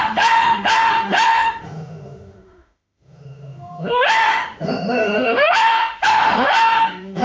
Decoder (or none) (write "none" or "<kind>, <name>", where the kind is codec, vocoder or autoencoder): autoencoder, DAC-VAE